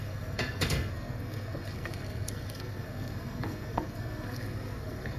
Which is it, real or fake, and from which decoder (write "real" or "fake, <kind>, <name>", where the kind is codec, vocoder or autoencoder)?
fake, codec, SNAC